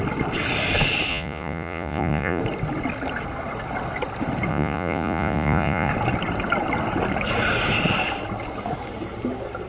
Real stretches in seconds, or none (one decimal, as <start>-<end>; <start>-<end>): 0.0-1.1; 2.4-4.5; 5.9-9.7